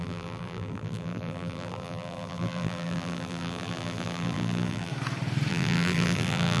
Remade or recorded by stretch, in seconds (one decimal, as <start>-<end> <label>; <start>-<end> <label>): 0.0-4.9 remade; 4.9-5.5 recorded; 5.5-6.6 remade